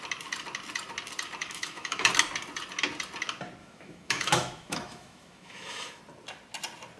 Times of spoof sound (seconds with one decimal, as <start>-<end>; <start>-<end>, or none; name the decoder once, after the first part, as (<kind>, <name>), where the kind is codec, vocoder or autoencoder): 1.4-2.1 (autoencoder, DAC-VAE); 3.6-6.0